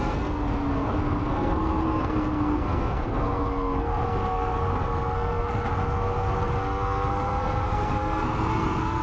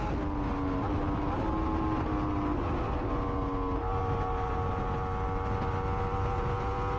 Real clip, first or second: second